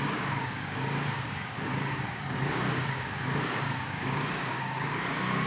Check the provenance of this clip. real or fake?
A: fake